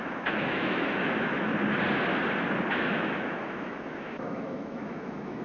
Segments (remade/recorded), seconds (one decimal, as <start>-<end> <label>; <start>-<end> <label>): 0.0-1.5 remade; 1.5-2.7 recorded; 2.7-5.4 remade